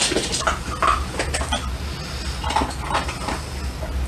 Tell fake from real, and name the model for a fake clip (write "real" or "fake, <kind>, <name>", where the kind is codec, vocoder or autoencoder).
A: real